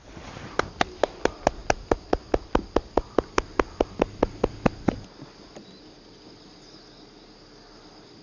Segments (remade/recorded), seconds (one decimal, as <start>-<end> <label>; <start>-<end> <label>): 0.0-1.6 recorded; 1.6-3.2 remade; 3.2-8.2 recorded